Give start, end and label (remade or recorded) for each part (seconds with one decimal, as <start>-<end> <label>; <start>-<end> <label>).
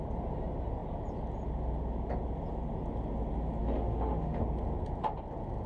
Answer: 0.0-3.6 recorded; 3.6-4.4 remade; 4.4-5.7 recorded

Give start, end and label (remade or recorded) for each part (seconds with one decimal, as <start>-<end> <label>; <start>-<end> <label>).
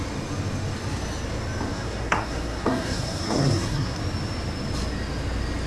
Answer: 0.0-1.7 recorded; 1.7-4.0 remade; 4.0-5.7 recorded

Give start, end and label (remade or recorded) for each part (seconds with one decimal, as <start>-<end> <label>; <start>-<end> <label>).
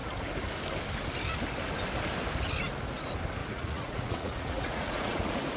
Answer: 0.0-3.4 recorded; 3.4-5.6 remade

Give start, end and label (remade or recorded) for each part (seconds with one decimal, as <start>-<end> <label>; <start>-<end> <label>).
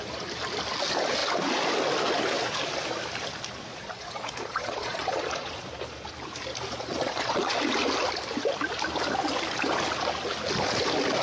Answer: 0.0-3.7 recorded; 3.7-5.7 remade; 5.7-6.9 recorded; 6.9-7.6 remade; 7.6-11.2 recorded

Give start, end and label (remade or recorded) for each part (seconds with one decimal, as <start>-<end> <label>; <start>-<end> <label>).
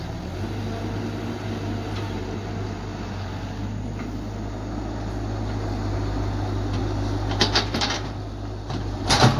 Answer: 0.0-9.4 recorded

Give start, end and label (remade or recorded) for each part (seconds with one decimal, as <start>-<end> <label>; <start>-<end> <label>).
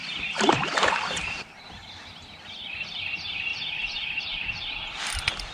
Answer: 0.0-2.9 remade; 2.9-3.5 recorded; 3.5-4.2 remade; 4.2-5.5 recorded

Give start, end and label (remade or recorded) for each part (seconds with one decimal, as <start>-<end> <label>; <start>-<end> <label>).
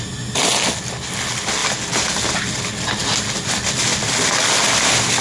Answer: 0.0-5.2 recorded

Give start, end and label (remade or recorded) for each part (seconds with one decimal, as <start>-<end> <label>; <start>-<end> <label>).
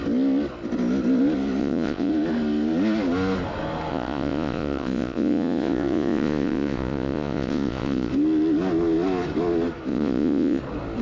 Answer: 0.0-1.6 recorded; 1.6-2.1 remade; 2.1-3.9 recorded; 3.9-8.1 remade; 8.1-9.9 recorded; 9.9-10.6 remade; 10.6-11.0 recorded